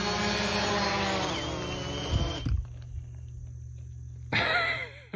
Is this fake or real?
real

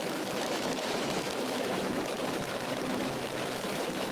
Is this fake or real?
fake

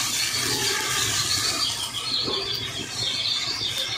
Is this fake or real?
real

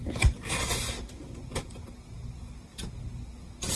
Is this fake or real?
real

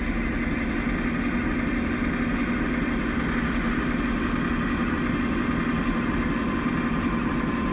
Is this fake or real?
real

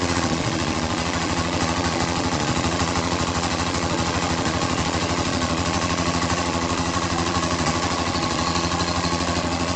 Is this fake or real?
fake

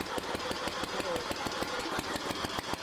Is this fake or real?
real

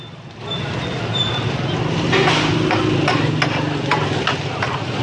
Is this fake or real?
real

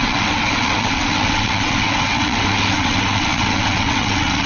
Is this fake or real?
fake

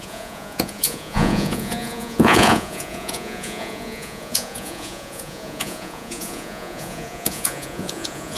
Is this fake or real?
fake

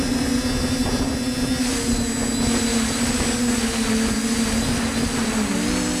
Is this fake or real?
real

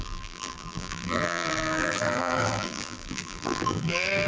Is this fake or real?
fake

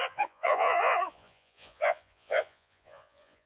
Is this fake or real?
fake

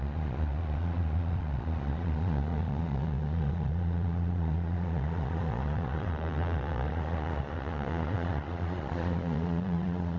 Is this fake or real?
fake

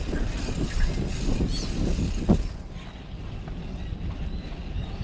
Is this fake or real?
real